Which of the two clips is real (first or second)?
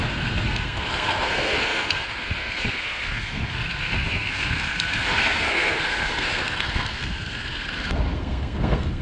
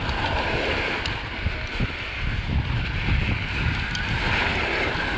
second